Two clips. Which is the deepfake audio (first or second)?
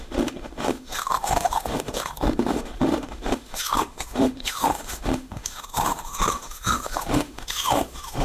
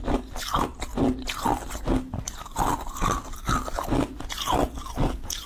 first